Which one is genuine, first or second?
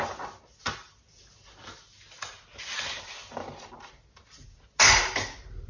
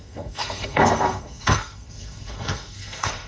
first